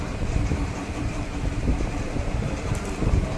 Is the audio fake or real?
fake